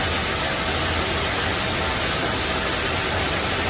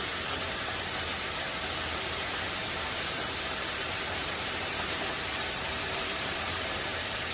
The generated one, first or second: second